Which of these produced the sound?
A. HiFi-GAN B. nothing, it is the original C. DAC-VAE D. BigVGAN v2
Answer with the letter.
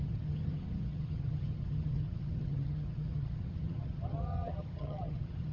A